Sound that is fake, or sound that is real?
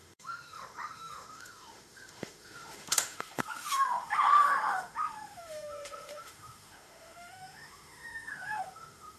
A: fake